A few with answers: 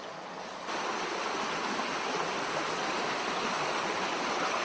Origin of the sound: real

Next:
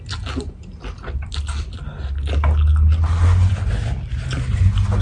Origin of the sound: real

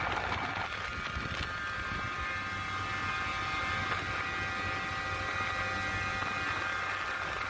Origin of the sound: real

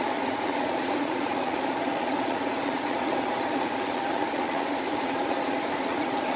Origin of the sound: fake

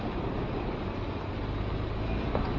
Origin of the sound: real